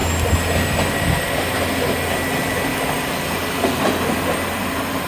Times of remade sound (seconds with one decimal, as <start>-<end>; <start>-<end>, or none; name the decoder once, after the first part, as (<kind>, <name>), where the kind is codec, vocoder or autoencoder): none